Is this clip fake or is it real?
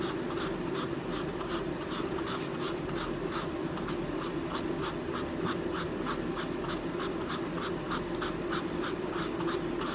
real